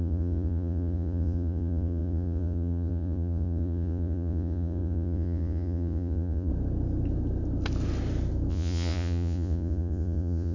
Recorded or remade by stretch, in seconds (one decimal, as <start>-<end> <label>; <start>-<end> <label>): 0.0-6.5 remade; 6.5-8.5 recorded; 8.5-10.5 remade

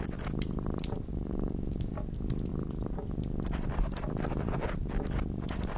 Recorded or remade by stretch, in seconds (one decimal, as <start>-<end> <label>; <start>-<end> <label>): 0.0-1.1 recorded; 1.1-1.9 remade; 1.9-5.8 recorded